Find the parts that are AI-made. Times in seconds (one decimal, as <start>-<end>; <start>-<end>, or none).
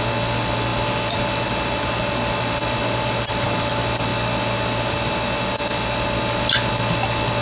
none